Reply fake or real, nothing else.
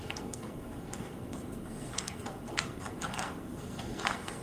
fake